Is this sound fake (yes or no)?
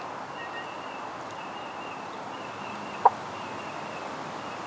no